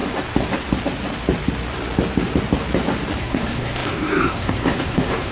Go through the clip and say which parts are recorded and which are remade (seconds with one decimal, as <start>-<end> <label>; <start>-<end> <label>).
0.0-3.2 recorded; 3.2-5.3 remade